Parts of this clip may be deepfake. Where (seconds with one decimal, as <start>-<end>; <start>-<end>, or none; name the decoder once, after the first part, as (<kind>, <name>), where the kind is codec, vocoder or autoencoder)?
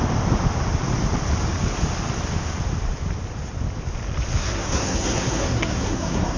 4.4-6.4 (codec, SNAC)